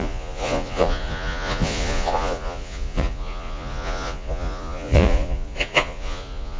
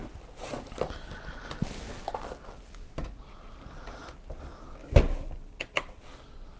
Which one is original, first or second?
second